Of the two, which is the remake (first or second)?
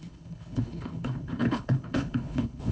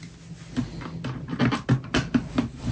first